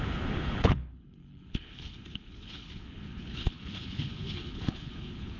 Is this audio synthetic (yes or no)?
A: yes